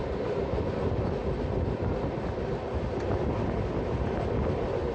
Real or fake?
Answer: real